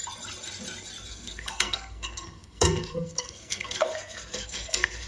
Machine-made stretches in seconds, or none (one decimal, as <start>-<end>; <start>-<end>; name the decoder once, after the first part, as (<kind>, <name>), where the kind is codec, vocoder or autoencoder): 1.1-5.1 (codec, SNAC)